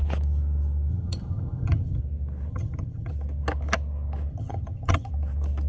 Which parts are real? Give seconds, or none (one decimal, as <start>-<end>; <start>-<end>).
0.0-0.9; 2.0-2.5; 3.1-4.3; 5.1-5.7